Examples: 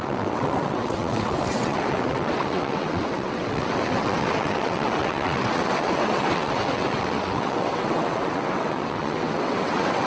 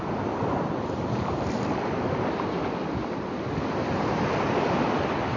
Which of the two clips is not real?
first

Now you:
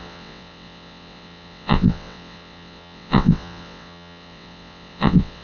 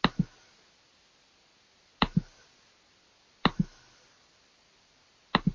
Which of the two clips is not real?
first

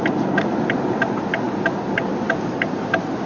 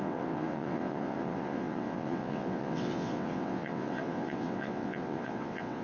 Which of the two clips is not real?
second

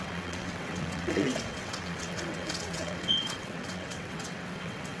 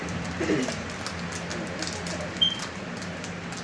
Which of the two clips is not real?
first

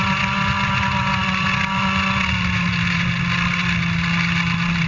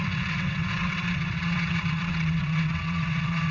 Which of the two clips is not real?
second